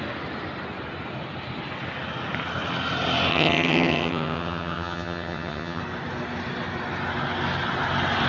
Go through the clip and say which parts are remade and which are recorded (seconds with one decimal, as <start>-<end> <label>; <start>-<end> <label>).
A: 0.0-3.3 recorded; 3.3-5.8 remade; 5.8-8.3 recorded